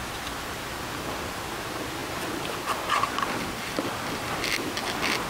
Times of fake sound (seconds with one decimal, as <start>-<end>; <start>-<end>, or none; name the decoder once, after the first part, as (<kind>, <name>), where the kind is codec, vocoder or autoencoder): none